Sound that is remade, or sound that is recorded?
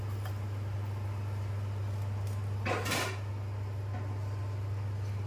recorded